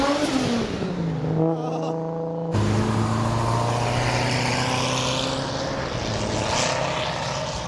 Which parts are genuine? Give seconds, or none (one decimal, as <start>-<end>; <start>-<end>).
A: 0.0-7.7